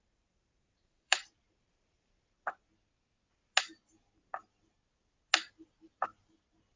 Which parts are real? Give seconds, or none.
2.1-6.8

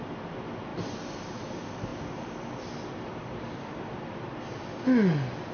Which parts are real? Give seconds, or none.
0.0-0.7; 1.5-5.5

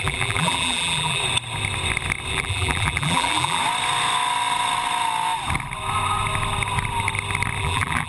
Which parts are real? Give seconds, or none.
1.2-2.3; 3.6-7.6

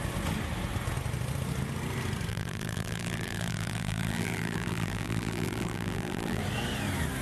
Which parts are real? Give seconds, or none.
0.0-2.3; 6.4-7.2

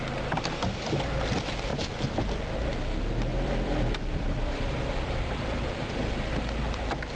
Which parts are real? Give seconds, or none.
0.0-3.3